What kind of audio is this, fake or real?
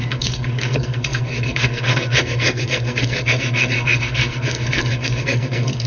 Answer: fake